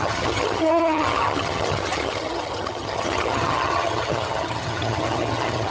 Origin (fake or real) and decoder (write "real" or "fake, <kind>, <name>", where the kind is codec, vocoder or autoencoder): fake, vocoder, HiFi-GAN